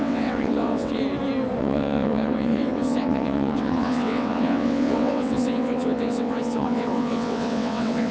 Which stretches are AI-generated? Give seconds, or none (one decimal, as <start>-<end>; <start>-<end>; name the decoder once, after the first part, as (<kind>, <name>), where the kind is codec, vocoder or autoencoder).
0.0-1.0 (vocoder, WaveNeXt); 1.6-8.1